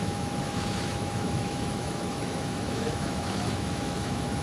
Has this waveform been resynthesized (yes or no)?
yes